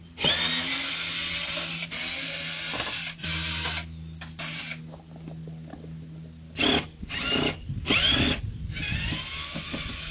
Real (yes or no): yes